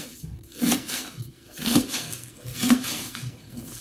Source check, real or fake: fake